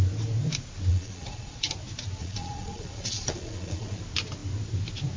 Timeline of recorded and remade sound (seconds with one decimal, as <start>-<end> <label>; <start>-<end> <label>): 0.0-0.9 recorded; 0.9-1.7 remade; 1.7-2.2 recorded; 2.2-4.0 remade; 4.0-5.2 recorded